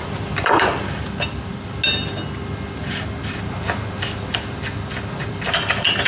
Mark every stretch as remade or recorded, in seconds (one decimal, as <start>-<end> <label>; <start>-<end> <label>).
0.0-1.5 remade; 1.5-5.2 recorded; 5.2-6.1 remade

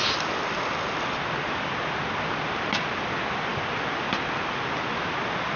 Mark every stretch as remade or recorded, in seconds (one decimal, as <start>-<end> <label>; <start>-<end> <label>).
0.0-3.5 recorded; 3.5-4.1 remade; 4.1-5.6 recorded